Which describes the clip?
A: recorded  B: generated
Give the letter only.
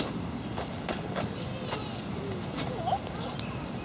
A